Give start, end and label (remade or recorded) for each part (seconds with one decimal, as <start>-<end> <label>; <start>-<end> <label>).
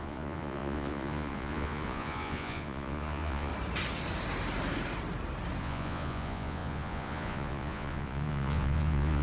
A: 0.0-3.5 remade; 3.5-5.6 recorded; 5.6-9.2 remade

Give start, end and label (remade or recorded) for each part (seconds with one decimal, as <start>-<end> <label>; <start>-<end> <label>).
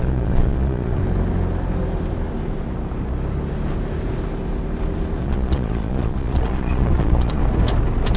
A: 0.0-1.0 remade; 1.0-5.2 recorded; 5.2-7.4 remade; 7.4-8.2 recorded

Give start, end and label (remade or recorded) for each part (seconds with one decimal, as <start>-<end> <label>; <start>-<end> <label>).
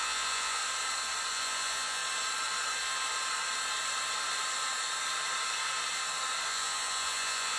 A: 0.0-0.6 remade; 0.6-1.3 recorded; 1.3-2.0 remade; 2.0-6.5 recorded; 6.5-7.6 remade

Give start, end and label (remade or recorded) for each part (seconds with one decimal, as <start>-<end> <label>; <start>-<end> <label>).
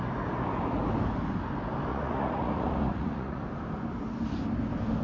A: 0.0-1.9 recorded; 1.9-3.4 remade; 3.4-5.0 recorded